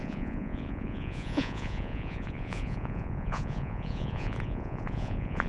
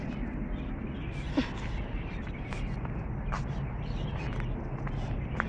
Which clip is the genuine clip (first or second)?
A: second